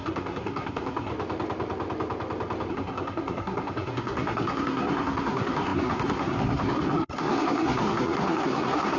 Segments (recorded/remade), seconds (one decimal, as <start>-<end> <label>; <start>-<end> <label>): 0.0-1.1 remade; 1.1-2.7 recorded; 2.7-9.0 remade